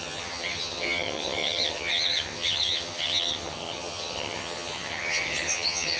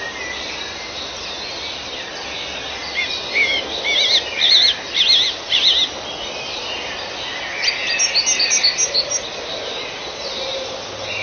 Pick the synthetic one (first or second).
first